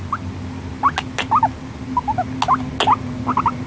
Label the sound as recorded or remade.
recorded